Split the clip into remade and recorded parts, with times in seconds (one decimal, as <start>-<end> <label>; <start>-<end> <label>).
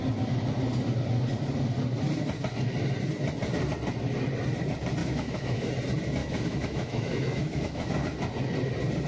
0.0-5.0 recorded; 5.0-5.7 remade; 5.7-6.2 recorded; 6.2-7.9 remade; 7.9-9.1 recorded